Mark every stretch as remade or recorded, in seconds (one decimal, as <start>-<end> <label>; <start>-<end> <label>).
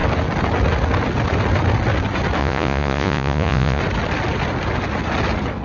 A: 0.0-2.4 recorded; 2.4-3.8 remade; 3.8-5.6 recorded